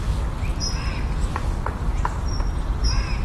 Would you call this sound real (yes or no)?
yes